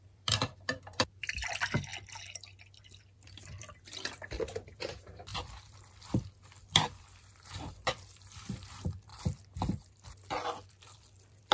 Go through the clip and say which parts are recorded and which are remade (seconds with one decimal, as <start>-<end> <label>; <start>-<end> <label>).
0.0-1.9 remade; 1.9-2.8 recorded; 2.8-9.1 remade; 9.1-10.7 recorded; 10.7-11.5 remade